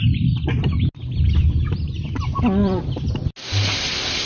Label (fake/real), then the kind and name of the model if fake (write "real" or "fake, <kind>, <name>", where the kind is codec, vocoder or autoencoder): real